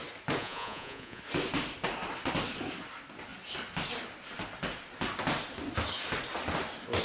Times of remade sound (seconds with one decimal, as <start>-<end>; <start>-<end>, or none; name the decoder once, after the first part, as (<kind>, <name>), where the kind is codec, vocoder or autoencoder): 0.4-1.2 (vocoder, Vocos)